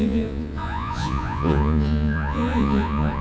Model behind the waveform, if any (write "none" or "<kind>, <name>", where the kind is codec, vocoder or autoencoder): vocoder, Vocos